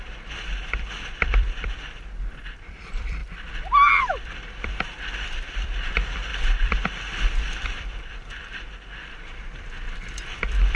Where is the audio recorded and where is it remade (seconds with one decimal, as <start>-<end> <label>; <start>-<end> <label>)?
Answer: 0.0-3.2 remade; 3.2-4.0 recorded; 4.0-10.8 remade